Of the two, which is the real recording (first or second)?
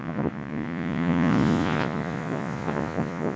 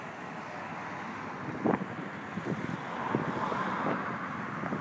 second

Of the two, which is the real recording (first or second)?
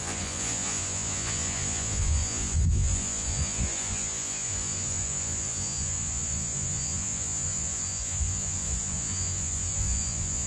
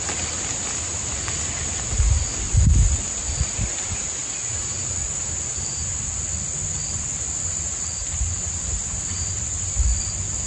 second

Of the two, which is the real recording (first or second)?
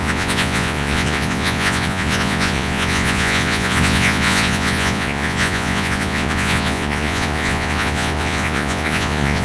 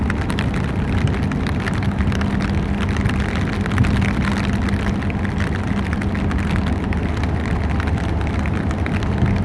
second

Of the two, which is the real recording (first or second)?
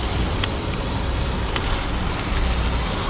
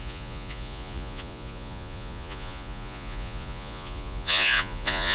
first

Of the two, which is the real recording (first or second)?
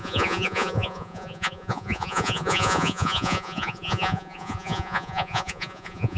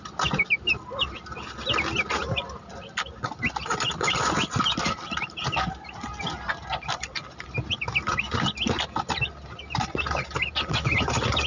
second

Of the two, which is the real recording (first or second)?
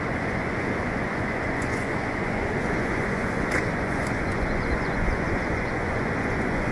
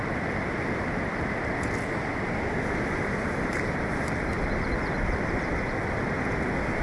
second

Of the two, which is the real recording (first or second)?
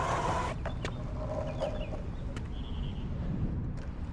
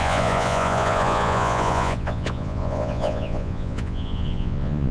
first